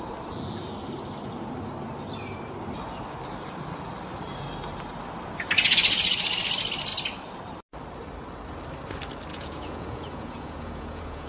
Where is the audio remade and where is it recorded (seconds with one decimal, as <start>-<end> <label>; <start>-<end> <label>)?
0.0-9.3 recorded; 9.3-11.3 remade

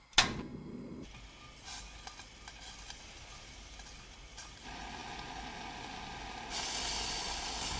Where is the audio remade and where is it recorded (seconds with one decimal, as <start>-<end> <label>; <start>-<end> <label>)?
0.0-7.8 recorded

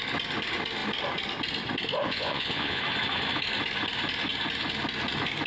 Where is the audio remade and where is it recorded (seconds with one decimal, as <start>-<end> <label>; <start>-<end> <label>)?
0.0-2.0 recorded; 2.0-2.8 remade; 2.8-5.5 recorded

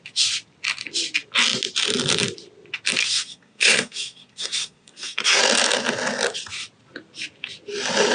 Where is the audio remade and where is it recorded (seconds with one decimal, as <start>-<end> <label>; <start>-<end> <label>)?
0.0-3.0 recorded; 3.0-5.4 remade; 5.4-8.1 recorded

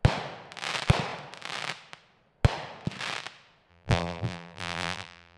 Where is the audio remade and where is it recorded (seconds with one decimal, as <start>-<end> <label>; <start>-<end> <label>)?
0.0-3.7 recorded; 3.7-5.4 remade

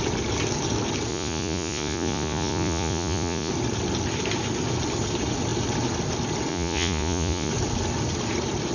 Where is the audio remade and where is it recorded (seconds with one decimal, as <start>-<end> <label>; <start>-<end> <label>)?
0.0-1.1 recorded; 1.1-3.5 remade; 3.5-6.5 recorded; 6.5-7.5 remade; 7.5-8.7 recorded

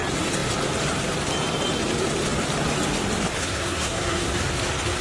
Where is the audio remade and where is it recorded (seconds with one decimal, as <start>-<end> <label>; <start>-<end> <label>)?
0.0-3.4 recorded; 3.4-4.3 remade; 4.3-5.0 recorded